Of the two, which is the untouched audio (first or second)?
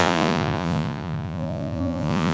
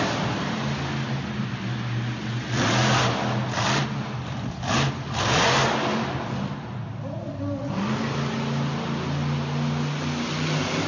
second